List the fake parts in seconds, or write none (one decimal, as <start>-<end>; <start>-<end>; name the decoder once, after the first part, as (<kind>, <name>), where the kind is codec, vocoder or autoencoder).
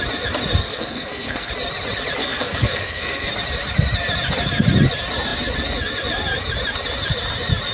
0.6-1.5 (codec, SNAC); 2.2-3.3